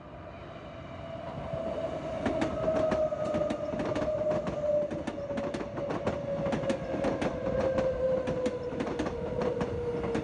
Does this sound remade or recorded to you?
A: recorded